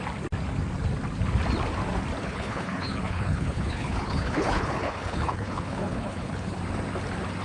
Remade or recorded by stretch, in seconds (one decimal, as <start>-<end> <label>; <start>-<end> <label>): 0.0-2.2 recorded; 2.2-6.6 remade; 6.6-7.4 recorded